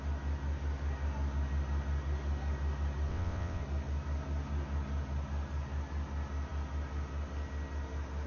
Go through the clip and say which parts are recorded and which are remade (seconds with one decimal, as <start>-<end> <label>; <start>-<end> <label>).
0.0-3.1 recorded; 3.1-3.6 remade; 3.6-8.3 recorded